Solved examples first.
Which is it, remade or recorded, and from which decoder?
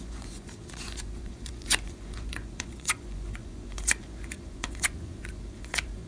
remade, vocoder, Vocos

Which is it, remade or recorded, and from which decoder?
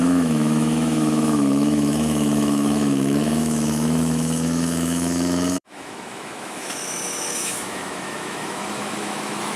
remade, autoencoder, DAC-VAE